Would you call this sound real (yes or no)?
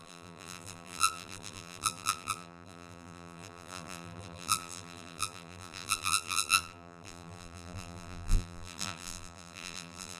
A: no